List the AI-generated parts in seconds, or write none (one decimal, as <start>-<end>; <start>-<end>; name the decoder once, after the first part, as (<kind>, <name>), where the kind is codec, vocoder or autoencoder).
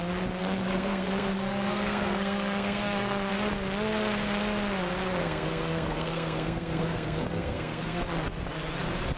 0.4-3.3 (codec, SNAC); 5.2-8.0